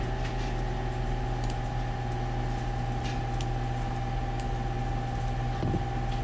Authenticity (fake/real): real